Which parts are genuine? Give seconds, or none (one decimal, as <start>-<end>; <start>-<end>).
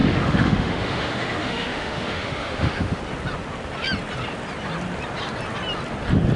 3.0-6.4